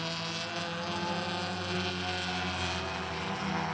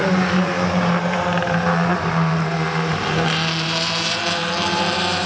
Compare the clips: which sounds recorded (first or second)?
first